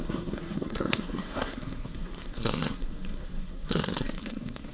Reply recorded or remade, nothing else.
remade